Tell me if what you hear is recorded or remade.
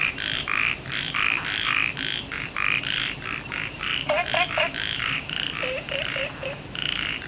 remade